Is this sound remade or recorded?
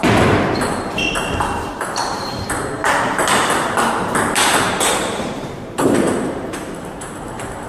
remade